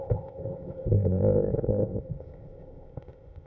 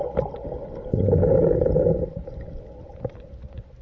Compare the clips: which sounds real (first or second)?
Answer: second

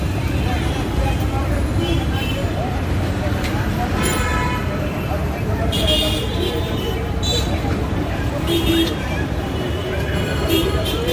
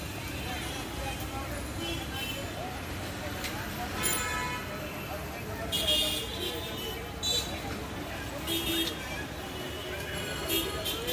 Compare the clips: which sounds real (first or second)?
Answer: second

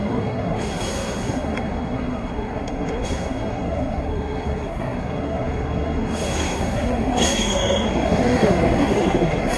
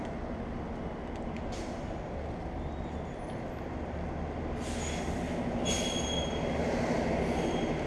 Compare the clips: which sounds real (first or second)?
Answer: second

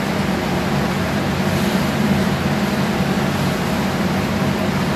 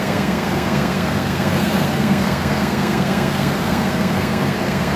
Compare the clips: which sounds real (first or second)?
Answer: first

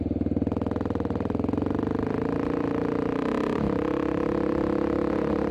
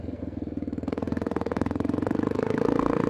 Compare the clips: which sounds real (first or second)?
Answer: first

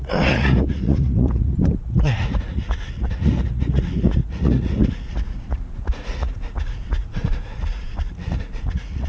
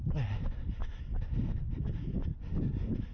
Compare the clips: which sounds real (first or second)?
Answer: second